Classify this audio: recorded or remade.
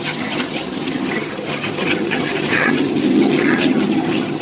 remade